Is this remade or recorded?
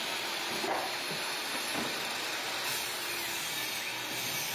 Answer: recorded